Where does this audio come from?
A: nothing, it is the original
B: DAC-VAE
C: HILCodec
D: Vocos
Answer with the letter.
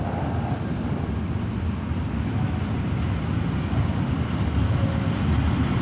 A